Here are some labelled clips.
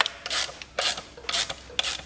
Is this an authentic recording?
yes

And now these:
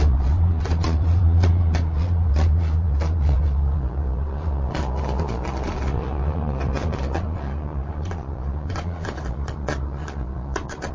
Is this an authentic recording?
no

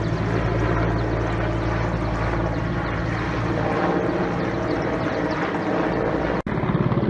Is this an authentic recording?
yes